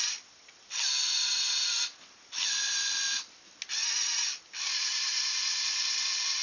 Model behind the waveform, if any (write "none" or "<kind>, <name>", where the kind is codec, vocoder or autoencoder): none